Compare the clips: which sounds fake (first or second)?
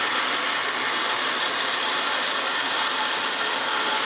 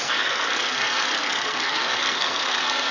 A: second